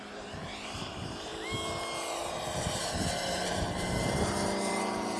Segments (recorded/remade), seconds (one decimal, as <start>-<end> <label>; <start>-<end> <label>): 0.0-1.3 remade; 1.3-2.8 recorded; 2.8-5.2 remade